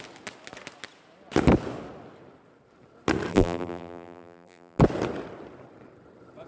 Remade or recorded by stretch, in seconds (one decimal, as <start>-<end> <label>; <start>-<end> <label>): 0.0-3.3 recorded; 3.3-4.8 remade; 4.8-6.5 recorded